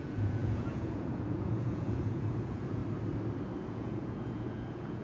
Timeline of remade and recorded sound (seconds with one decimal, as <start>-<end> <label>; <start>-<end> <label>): 0.0-2.8 remade; 2.8-3.6 recorded; 3.6-5.0 remade